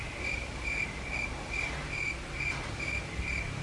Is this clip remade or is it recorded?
recorded